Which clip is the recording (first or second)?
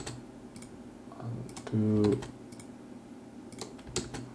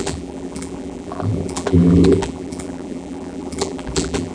first